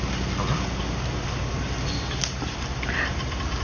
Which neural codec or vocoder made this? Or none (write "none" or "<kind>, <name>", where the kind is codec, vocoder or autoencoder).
none